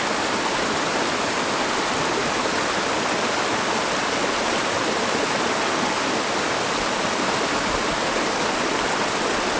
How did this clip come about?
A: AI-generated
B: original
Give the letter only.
B